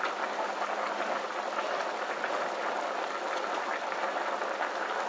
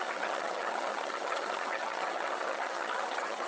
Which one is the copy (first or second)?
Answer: second